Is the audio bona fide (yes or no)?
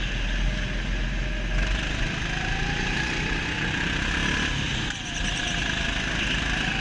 yes